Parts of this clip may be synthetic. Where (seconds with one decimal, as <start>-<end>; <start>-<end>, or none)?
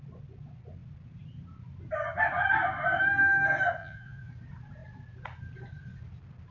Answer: 3.8-4.3